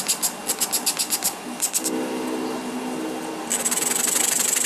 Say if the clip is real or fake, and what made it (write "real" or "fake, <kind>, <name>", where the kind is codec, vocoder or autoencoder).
real